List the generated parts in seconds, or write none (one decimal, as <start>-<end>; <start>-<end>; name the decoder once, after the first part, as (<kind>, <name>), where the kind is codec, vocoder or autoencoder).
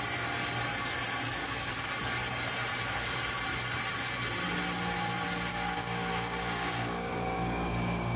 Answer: 1.4-1.9 (codec, DAC); 5.5-8.2